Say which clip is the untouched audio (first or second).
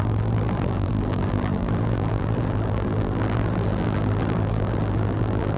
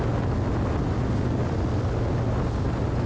second